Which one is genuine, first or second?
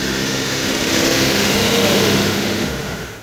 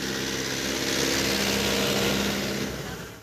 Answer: second